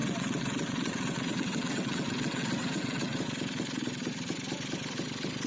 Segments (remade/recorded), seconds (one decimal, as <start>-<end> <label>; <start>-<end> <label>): 0.0-3.2 remade; 3.2-5.5 recorded